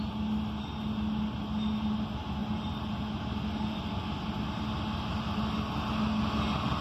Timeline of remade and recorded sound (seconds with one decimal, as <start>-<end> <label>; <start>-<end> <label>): 0.0-6.8 recorded